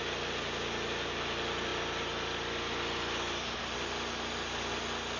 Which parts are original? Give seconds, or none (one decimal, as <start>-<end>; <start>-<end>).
0.0-5.2